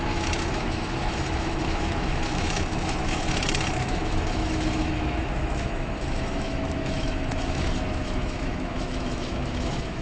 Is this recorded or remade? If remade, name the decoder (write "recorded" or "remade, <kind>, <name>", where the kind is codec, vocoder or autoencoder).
remade, autoencoder, DAC-VAE